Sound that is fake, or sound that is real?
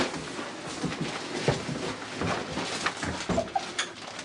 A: real